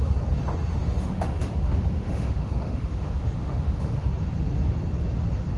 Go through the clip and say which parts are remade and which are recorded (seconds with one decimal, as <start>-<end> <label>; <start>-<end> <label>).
0.0-0.7 recorded; 0.7-4.1 remade; 4.1-5.6 recorded